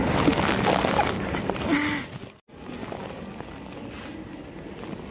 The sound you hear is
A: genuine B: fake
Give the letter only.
A